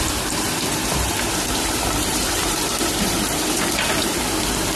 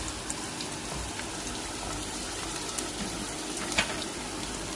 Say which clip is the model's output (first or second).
first